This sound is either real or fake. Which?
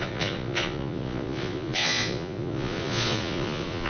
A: fake